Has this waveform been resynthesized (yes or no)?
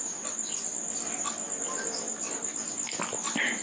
no